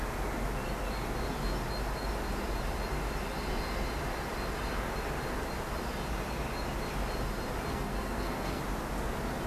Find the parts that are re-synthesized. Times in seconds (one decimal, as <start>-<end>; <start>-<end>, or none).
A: 7.7-8.6